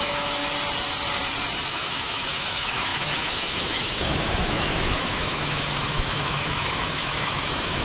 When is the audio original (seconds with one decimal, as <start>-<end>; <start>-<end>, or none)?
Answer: 0.4-1.7